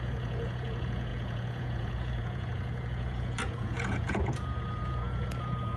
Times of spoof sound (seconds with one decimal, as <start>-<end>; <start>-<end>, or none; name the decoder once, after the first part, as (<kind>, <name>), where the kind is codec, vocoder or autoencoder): 0.0-5.8 (vocoder, Vocos)